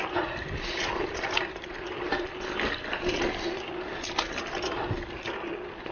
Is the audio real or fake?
real